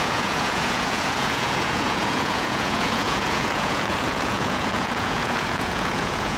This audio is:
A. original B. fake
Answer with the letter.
B